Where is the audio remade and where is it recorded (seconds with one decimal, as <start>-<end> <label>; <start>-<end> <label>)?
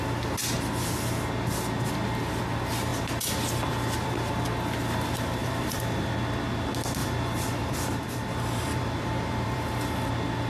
0.0-5.4 recorded; 5.4-6.1 remade; 6.1-7.0 recorded; 7.0-10.1 remade; 10.1-10.5 recorded